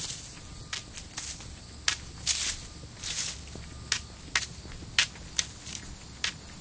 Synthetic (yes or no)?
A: no